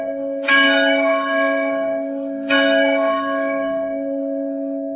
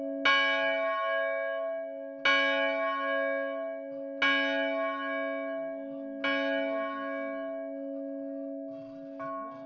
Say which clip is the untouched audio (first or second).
second